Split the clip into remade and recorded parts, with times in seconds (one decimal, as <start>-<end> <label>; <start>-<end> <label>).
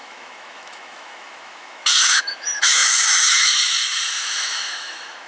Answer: 0.0-5.3 remade